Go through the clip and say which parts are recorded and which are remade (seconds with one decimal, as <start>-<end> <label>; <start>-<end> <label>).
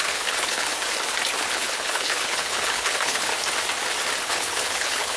0.0-0.7 remade; 0.7-1.4 recorded; 1.4-3.3 remade; 3.3-4.2 recorded; 4.2-5.2 remade